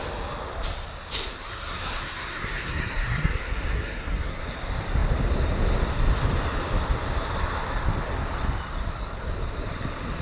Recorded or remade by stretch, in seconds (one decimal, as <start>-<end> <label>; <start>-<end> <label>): 0.0-1.3 recorded; 1.3-4.4 remade; 4.4-10.2 recorded